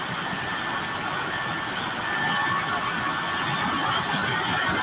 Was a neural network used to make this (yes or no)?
no